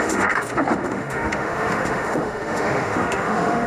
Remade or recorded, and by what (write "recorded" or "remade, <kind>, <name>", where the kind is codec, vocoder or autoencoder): remade, autoencoder, DAC-VAE